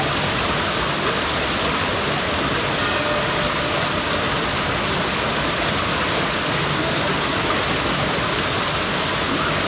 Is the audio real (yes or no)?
yes